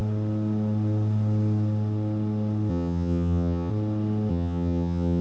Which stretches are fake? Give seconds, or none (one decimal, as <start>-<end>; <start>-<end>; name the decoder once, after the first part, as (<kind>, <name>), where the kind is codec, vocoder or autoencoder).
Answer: 2.7-3.7 (vocoder, HiFi-GAN); 4.3-5.2